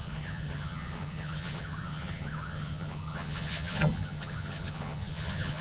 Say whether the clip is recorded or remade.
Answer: remade